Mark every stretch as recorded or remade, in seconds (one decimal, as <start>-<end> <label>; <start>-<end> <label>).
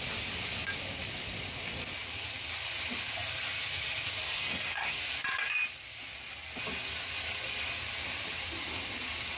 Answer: 0.0-4.2 recorded; 4.2-5.0 remade; 5.0-9.4 recorded